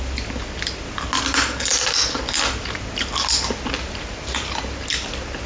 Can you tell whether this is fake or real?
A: real